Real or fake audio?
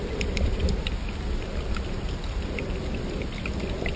real